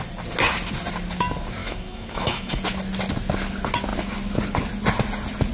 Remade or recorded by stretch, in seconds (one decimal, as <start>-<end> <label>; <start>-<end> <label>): 0.0-1.6 recorded; 1.6-2.6 remade; 2.6-5.5 recorded